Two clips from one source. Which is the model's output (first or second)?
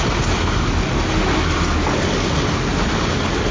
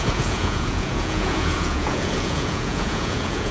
second